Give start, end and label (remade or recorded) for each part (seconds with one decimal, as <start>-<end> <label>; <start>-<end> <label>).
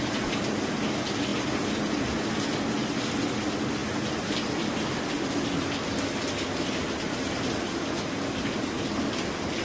0.0-9.6 recorded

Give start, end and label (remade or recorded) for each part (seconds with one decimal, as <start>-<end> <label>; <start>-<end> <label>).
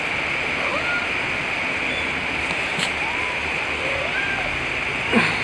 0.0-2.7 recorded; 2.7-3.6 remade; 3.6-5.4 recorded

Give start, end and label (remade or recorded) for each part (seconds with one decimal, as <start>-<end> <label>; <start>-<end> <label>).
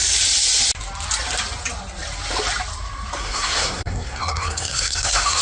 0.0-3.2 recorded; 3.2-5.4 remade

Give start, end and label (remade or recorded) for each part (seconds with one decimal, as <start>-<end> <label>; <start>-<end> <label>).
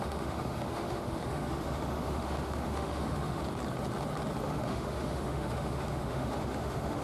0.0-3.4 remade; 3.4-4.4 recorded; 4.4-7.0 remade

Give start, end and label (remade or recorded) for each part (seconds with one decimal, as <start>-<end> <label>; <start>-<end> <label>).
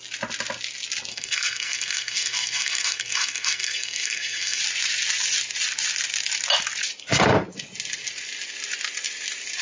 0.0-1.1 recorded; 1.1-4.6 remade; 4.6-9.6 recorded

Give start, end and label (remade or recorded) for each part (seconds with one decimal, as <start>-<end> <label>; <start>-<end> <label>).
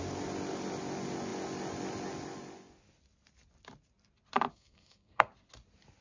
0.0-4.5 recorded; 4.5-5.3 remade; 5.3-6.0 recorded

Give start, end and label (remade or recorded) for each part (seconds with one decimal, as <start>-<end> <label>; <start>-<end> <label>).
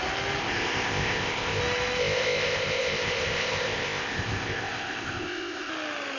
0.0-0.4 recorded; 0.4-1.6 remade; 1.6-2.0 recorded; 2.0-5.7 remade; 5.7-6.2 recorded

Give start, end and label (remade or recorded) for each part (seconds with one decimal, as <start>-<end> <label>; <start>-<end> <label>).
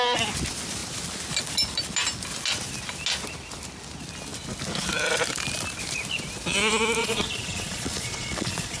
0.0-7.0 recorded; 7.0-8.8 remade